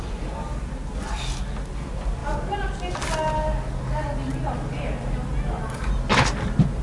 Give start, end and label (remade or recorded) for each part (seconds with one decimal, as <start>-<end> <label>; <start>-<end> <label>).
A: 0.0-6.8 recorded